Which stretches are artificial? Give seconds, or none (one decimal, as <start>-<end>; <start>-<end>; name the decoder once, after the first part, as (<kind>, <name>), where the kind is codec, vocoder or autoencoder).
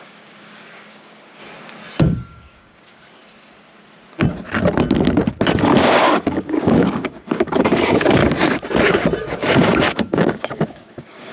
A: 0.0-1.4 (codec, DAC); 2.0-3.2; 5.8-8.2; 9.2-11.3